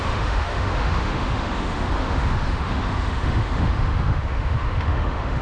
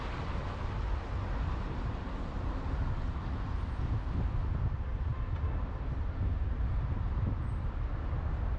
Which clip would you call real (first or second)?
second